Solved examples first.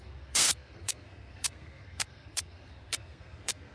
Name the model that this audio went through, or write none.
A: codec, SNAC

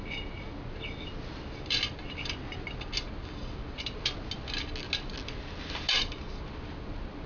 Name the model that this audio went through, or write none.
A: none